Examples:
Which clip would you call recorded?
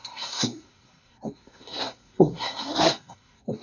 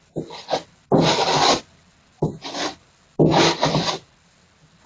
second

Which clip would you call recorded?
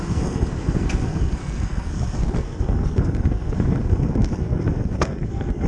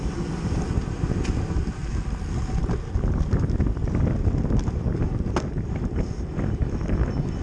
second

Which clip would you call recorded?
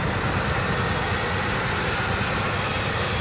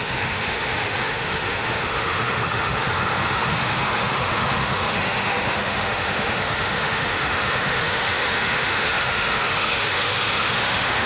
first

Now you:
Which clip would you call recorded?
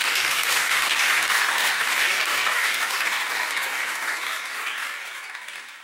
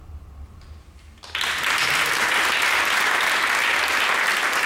second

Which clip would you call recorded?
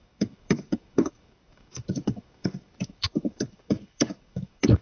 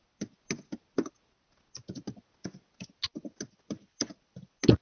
second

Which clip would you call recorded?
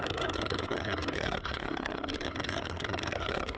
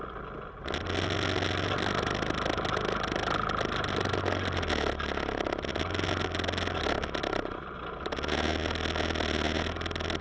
second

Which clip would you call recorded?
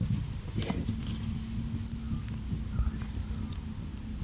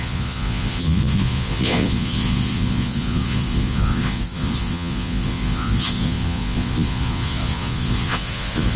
first